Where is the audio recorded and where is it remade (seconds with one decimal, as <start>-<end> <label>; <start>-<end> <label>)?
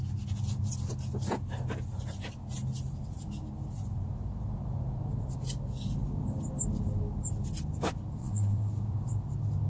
0.0-8.2 recorded; 8.2-8.7 remade; 8.7-9.7 recorded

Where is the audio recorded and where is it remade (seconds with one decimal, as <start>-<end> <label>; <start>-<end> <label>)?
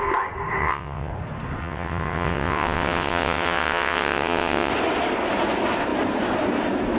0.0-0.6 recorded; 0.6-1.1 remade; 1.1-1.6 recorded; 1.6-4.7 remade; 4.7-7.0 recorded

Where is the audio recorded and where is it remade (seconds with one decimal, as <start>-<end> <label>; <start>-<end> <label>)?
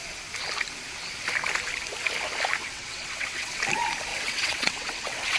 0.0-2.6 recorded; 2.6-3.6 remade; 3.6-4.1 recorded; 4.1-5.4 remade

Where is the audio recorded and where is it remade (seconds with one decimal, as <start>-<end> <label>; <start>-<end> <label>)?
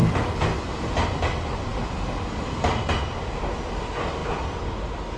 0.0-5.2 recorded